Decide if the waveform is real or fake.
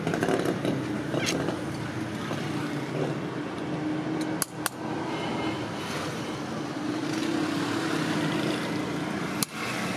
real